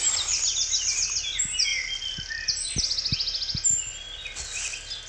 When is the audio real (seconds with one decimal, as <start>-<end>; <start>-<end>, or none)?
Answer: 0.0-5.1